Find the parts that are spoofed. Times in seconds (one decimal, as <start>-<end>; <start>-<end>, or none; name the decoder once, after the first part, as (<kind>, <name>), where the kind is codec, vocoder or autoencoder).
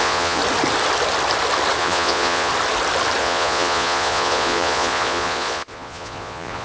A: 0.0-0.4 (vocoder, Vocos); 1.8-2.5; 3.2-6.6